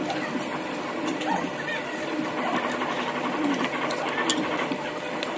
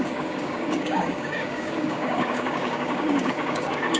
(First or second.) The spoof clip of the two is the second